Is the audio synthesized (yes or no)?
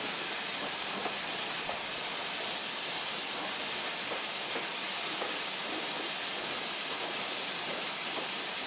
no